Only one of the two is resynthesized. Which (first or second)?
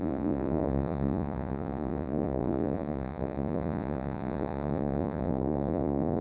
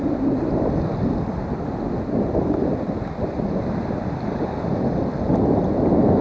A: first